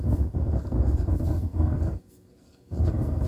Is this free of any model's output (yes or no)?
no